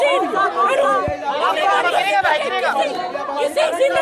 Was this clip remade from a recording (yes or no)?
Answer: no